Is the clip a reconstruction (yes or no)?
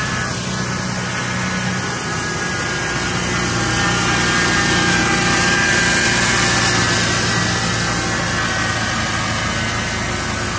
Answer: no